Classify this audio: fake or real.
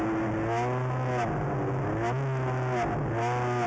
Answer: real